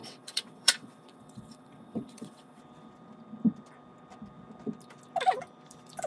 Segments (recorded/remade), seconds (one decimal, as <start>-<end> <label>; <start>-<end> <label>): 0.0-2.6 remade; 2.6-6.1 recorded